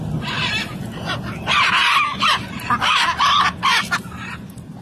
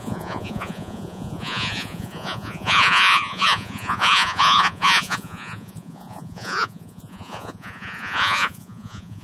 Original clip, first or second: first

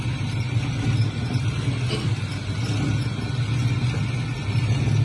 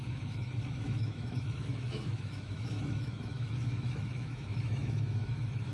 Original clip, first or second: first